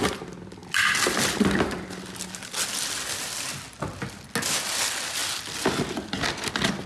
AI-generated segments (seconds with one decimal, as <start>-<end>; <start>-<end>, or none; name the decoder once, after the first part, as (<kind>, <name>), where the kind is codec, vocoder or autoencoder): none